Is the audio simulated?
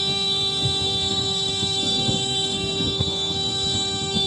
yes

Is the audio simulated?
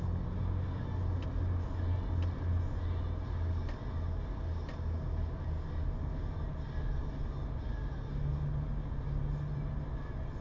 no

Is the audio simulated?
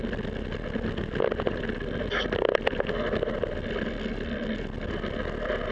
no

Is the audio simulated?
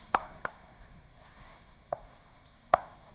yes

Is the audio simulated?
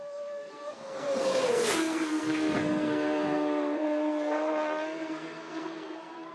yes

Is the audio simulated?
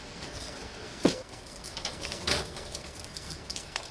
yes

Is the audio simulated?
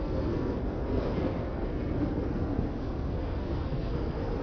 yes